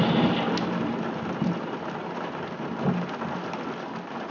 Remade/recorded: recorded